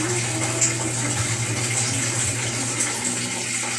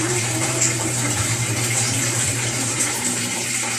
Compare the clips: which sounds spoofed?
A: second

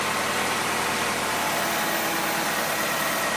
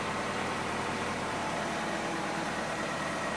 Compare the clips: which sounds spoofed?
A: second